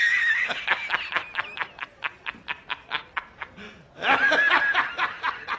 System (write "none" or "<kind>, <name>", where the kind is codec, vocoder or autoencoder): none